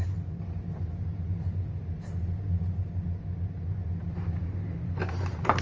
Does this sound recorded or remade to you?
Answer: recorded